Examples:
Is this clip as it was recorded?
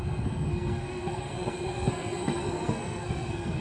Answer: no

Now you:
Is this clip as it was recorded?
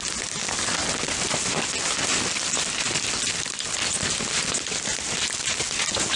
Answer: yes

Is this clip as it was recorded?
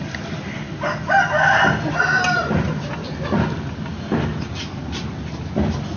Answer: yes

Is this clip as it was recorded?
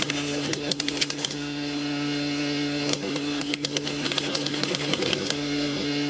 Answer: no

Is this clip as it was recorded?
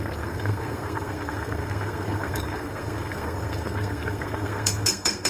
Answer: no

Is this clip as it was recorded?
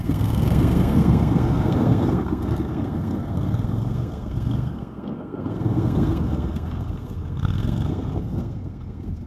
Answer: no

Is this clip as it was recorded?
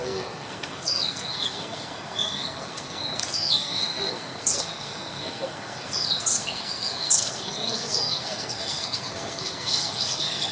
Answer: no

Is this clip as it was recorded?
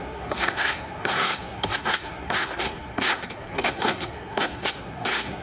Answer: no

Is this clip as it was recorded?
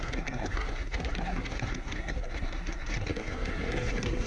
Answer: no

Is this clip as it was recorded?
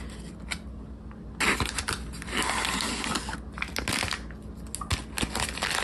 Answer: yes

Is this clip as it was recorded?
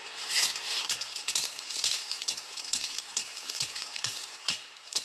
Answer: no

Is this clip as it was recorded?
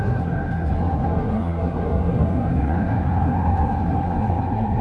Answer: no